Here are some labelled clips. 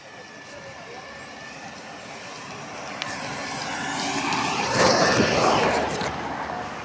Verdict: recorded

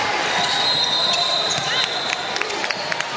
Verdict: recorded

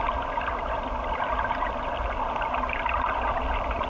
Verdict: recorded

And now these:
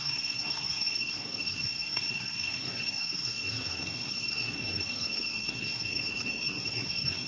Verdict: remade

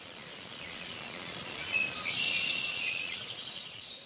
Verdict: remade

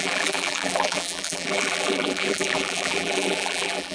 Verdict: remade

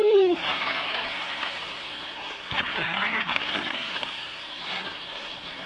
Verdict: remade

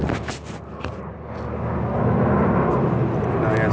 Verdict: recorded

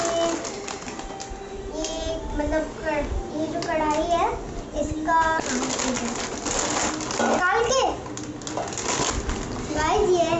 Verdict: recorded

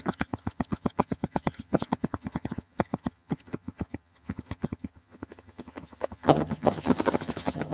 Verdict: remade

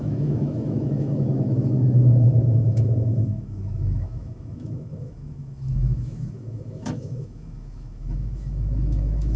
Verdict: remade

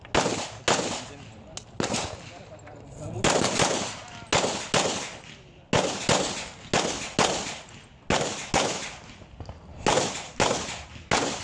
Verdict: recorded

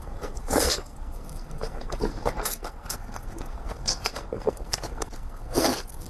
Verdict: remade